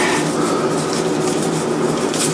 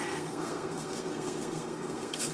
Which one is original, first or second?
first